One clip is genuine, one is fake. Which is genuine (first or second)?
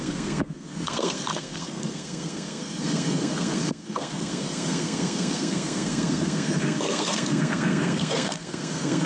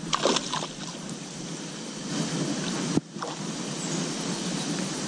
second